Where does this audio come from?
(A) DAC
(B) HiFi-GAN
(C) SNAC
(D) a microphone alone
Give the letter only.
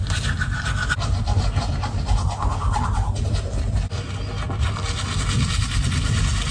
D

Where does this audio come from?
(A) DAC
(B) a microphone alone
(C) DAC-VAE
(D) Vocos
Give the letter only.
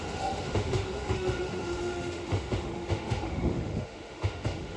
C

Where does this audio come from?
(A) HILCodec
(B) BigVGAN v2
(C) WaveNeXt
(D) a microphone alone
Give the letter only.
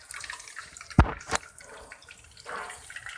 B